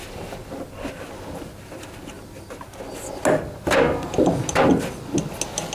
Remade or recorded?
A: recorded